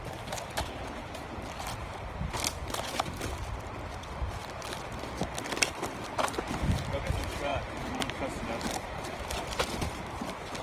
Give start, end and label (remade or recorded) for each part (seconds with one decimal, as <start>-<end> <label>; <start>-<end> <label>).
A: 0.0-10.6 recorded